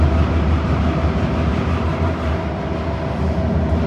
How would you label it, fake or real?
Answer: real